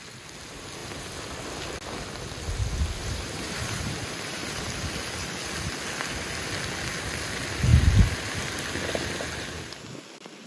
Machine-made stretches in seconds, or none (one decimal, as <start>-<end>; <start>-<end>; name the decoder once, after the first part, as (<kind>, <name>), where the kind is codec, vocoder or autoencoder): 3.0-4.8 (vocoder, BigVGAN v2)